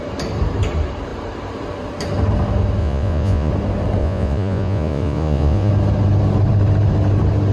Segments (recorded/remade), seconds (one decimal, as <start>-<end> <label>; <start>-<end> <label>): 0.0-2.8 recorded; 2.8-3.5 remade; 3.5-4.0 recorded; 4.0-5.7 remade; 5.7-7.5 recorded